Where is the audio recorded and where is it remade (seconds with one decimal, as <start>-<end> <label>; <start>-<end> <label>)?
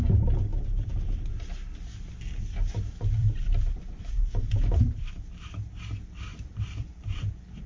0.0-0.5 recorded; 0.5-1.3 remade; 1.3-3.2 recorded; 3.2-5.1 remade; 5.1-6.3 recorded; 6.3-7.2 remade; 7.2-7.7 recorded